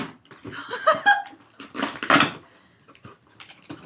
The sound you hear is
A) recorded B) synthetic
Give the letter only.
A